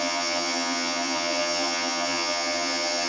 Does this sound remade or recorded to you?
remade